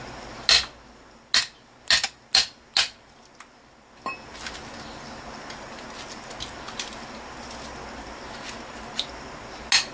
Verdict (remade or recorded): recorded